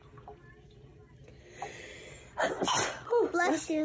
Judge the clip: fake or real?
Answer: real